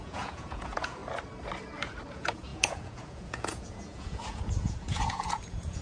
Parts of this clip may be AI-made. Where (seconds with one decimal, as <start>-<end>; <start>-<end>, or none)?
0.0-1.0; 2.1-5.8